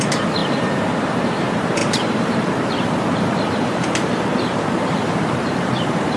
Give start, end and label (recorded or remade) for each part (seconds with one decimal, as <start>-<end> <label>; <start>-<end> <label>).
0.0-6.2 remade